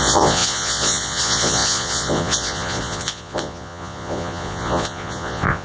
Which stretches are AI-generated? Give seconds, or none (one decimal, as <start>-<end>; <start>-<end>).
0.0-5.6